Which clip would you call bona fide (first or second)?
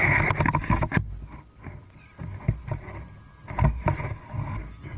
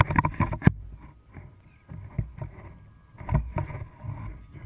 first